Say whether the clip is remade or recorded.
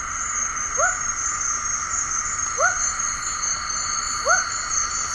recorded